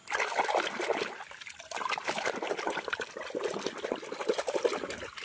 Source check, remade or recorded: recorded